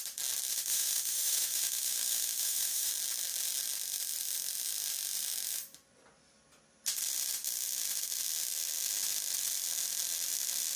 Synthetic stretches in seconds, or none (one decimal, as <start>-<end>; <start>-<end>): 0.5-2.9